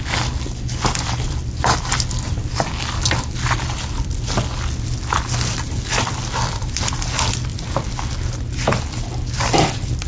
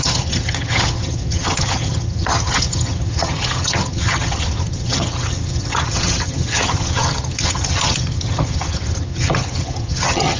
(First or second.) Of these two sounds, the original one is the first